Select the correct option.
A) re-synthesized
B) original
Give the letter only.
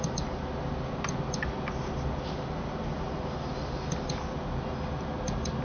B